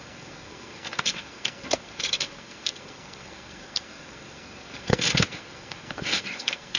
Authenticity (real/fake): fake